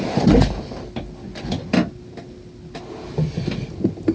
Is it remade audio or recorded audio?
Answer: recorded